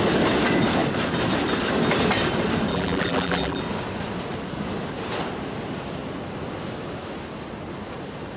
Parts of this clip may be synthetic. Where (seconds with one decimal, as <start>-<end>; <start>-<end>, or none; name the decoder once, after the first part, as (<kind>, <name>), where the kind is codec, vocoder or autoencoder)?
2.7-3.6 (vocoder, BigVGAN v2)